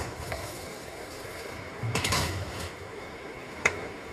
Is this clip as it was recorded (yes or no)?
no